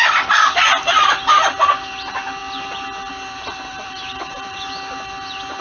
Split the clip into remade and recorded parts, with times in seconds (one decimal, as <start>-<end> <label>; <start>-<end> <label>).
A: 0.0-3.7 recorded; 3.7-4.6 remade; 4.6-5.6 recorded